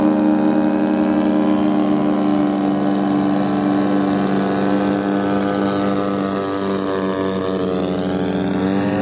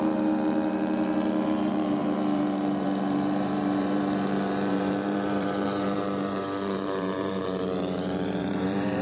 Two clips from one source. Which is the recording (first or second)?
first